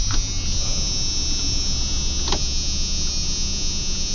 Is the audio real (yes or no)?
yes